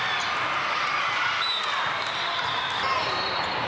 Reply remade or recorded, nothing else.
recorded